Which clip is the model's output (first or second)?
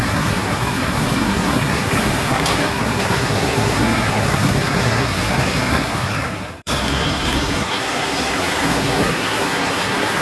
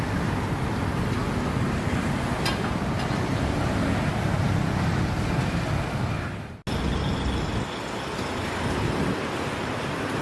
first